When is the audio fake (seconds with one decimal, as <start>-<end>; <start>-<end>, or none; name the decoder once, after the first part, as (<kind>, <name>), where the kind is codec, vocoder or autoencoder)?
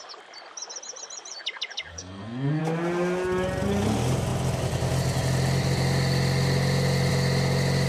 1.9-2.6 (codec, SNAC)